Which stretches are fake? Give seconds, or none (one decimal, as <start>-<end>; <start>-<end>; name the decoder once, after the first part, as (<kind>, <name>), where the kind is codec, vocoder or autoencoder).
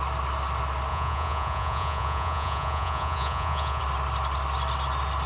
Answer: 0.9-3.8 (vocoder, Vocos)